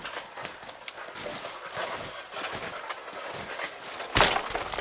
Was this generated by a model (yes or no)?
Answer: no